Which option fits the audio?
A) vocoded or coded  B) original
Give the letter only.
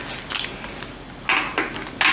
B